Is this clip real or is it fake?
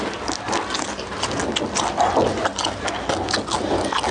real